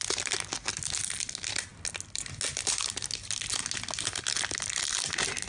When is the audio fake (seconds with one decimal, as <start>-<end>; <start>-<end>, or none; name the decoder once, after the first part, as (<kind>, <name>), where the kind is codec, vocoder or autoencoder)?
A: none